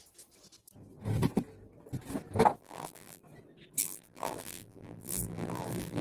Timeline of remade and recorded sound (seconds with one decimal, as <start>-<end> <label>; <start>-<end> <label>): 0.0-2.6 recorded; 2.6-3.2 remade; 3.2-3.8 recorded; 3.8-6.0 remade